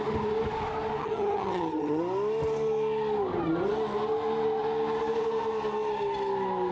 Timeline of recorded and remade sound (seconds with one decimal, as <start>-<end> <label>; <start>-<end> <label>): 0.0-1.0 recorded; 1.0-2.0 remade; 2.0-6.7 recorded

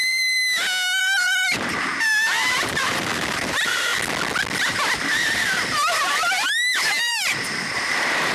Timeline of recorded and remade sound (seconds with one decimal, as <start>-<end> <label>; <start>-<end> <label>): 0.0-0.4 remade; 0.4-1.0 recorded; 1.0-3.9 remade; 3.9-4.6 recorded; 4.6-8.3 remade